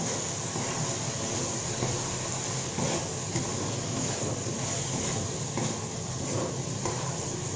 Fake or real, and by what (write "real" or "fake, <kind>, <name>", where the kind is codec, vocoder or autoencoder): real